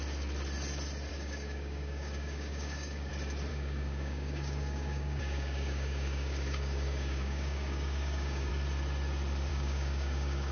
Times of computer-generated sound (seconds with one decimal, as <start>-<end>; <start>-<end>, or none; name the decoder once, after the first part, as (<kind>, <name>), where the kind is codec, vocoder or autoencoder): 1.1-3.1 (codec, DAC); 3.5-8.5; 9.5-10.5